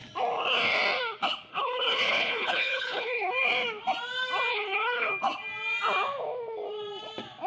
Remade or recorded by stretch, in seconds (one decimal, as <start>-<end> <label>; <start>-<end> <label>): 0.0-1.5 recorded; 1.5-3.3 remade; 3.3-4.5 recorded; 4.5-5.1 remade; 5.1-7.5 recorded